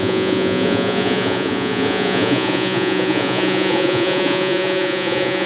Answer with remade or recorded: remade